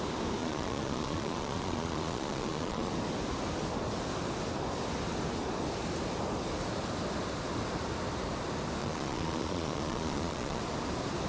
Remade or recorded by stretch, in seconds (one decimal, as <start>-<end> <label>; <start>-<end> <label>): 0.0-0.4 recorded; 0.4-2.9 remade; 2.9-8.8 recorded; 8.8-10.6 remade; 10.6-11.3 recorded